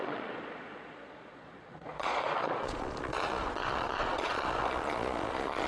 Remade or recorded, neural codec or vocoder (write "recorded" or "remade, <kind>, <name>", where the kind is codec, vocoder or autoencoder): remade, vocoder, Vocos